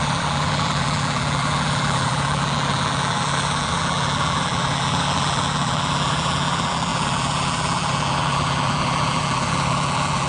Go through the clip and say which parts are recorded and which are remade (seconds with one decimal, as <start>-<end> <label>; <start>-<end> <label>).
0.0-10.3 remade